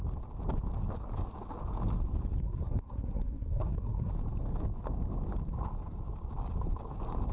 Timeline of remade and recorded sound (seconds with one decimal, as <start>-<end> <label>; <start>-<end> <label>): 0.0-2.4 recorded; 2.4-4.1 remade; 4.1-7.3 recorded